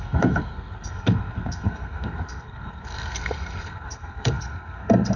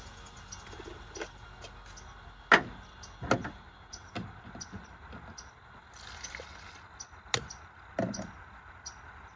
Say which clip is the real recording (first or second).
second